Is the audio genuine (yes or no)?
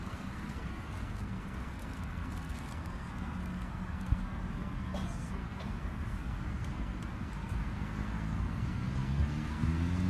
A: no